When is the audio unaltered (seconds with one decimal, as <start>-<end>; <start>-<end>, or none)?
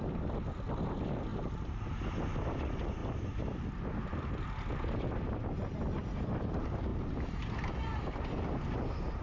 0.0-1.3; 2.1-6.9; 7.7-9.2